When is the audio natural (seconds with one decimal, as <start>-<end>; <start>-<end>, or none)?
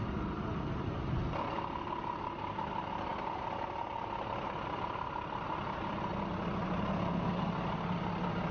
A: 0.0-8.5